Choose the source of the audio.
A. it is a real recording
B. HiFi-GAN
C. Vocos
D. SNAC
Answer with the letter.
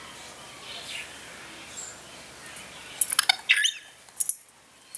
A